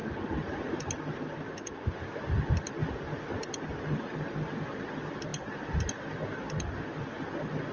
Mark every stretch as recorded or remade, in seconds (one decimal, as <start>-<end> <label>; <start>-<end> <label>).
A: 0.0-7.7 recorded